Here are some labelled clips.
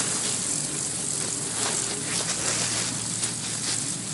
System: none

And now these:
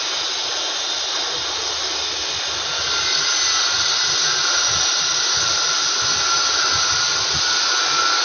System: none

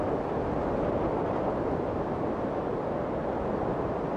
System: none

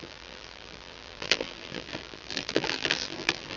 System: vocoder, BigVGAN v2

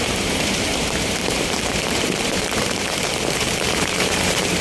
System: vocoder, BigVGAN v2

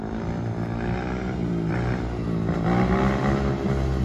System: none